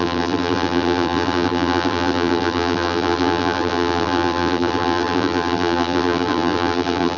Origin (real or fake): fake